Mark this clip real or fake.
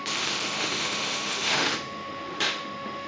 fake